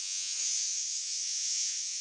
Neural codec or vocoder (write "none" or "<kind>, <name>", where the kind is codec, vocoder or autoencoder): vocoder, Vocos